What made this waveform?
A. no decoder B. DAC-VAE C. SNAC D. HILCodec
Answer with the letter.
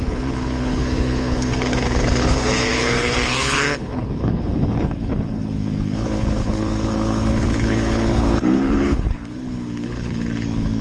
D